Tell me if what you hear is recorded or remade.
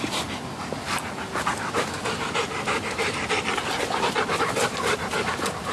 recorded